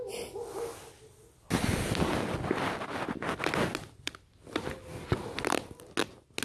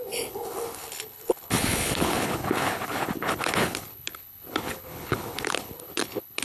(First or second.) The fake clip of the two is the second